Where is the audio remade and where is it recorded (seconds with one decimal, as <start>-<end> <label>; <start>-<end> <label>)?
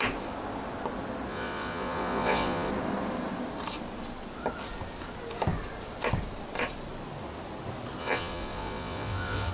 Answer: 0.0-1.3 recorded; 1.3-2.7 remade; 2.7-8.0 recorded; 8.0-9.5 remade